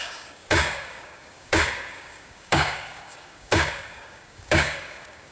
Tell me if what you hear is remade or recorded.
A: remade